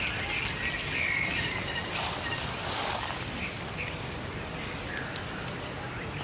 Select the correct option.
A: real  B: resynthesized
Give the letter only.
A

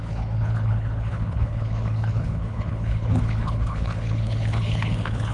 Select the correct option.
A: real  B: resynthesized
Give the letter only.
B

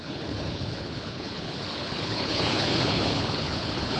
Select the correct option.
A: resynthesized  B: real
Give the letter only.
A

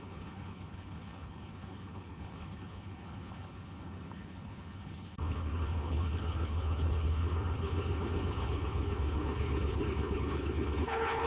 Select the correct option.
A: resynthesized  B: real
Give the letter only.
A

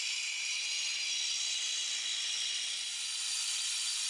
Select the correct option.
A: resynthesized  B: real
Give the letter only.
B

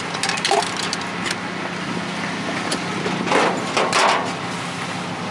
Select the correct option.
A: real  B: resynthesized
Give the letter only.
A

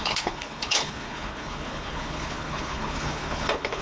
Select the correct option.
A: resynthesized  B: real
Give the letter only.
A